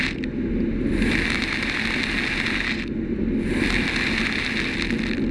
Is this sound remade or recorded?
recorded